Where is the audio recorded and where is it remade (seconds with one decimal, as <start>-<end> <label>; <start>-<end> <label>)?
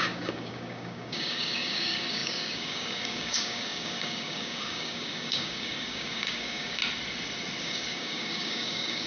0.0-6.8 remade; 6.8-7.6 recorded; 7.6-9.1 remade